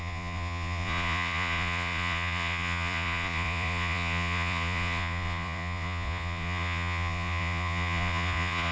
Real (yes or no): no